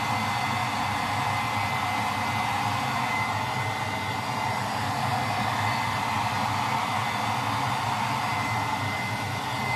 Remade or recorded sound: recorded